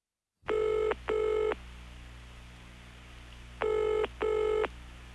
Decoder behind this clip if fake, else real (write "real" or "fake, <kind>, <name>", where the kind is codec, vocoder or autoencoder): real